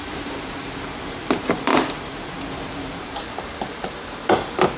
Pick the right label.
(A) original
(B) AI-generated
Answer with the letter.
B